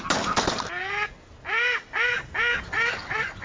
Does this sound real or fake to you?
real